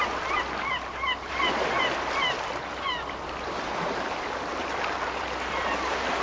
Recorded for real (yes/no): no